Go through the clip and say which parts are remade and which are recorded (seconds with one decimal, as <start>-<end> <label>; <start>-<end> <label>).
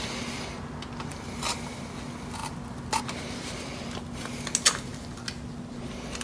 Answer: 0.0-1.1 recorded; 1.1-1.8 remade; 1.8-6.2 recorded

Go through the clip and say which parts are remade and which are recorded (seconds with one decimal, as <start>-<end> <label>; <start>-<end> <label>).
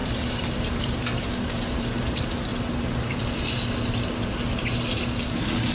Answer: 0.0-2.0 remade; 2.0-5.7 recorded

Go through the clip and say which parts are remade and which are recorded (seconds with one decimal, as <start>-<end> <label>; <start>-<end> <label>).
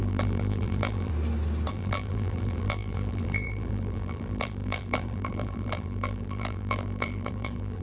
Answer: 0.0-1.1 remade; 1.1-1.7 recorded; 1.7-7.8 remade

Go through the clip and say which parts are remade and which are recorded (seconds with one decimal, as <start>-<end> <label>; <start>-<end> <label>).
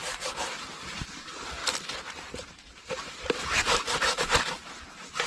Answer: 0.0-1.6 remade; 1.6-2.7 recorded; 2.7-5.3 remade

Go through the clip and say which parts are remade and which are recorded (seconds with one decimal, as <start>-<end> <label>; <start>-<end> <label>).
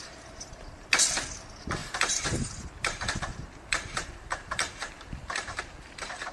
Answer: 0.0-0.9 remade; 0.9-1.8 recorded; 1.8-5.6 remade; 5.6-6.3 recorded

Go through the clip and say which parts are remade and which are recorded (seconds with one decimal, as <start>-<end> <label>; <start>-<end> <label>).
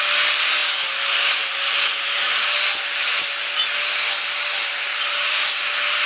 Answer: 0.0-4.6 recorded; 4.6-5.6 remade; 5.6-6.1 recorded